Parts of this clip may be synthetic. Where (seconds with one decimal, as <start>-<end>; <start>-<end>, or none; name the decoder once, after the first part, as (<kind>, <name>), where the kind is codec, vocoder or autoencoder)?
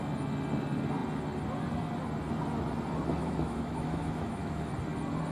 3.2-4.7 (autoencoder, DAC-VAE)